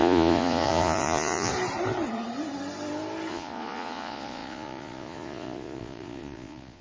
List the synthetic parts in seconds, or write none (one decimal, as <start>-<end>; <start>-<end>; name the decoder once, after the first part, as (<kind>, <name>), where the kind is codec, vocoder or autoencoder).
0.0-1.5 (vocoder, Vocos); 3.3-6.8